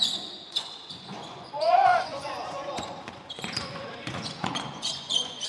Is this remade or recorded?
remade